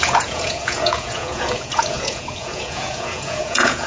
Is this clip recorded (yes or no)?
no